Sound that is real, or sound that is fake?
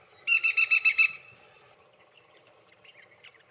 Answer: real